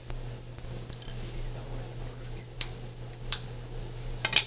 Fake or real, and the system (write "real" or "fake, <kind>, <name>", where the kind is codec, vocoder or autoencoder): real